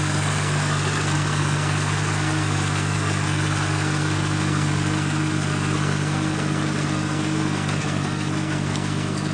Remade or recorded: remade